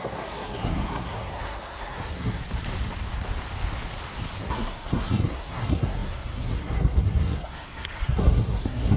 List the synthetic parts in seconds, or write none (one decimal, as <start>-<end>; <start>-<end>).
0.0-2.4; 4.4-9.0